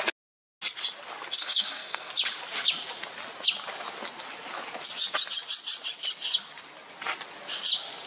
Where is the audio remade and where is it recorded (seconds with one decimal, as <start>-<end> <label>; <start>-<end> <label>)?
0.0-1.4 recorded; 1.4-2.1 remade; 2.1-8.1 recorded